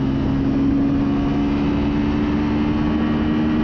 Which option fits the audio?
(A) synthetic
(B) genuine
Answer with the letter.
B